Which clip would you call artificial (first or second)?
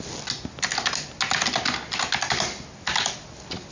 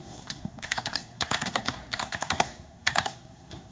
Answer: second